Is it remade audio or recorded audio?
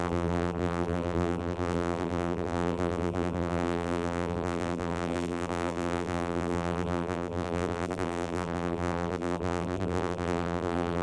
remade